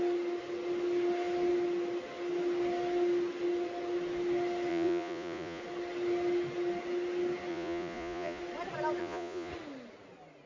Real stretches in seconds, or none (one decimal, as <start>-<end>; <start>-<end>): 0.0-4.7; 5.6-7.5; 8.4-9.0; 9.5-10.5